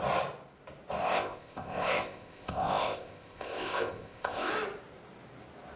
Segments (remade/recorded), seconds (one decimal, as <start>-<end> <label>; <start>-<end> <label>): 0.0-1.0 recorded; 1.0-4.5 remade; 4.5-5.8 recorded